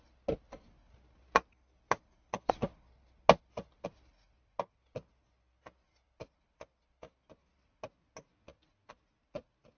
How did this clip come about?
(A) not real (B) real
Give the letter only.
B